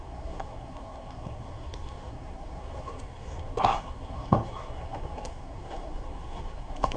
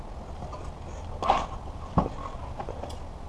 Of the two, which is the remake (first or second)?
first